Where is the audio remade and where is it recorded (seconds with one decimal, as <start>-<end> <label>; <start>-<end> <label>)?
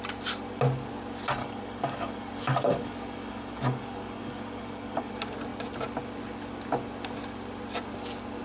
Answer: 0.0-1.4 recorded; 1.4-5.1 remade; 5.1-8.4 recorded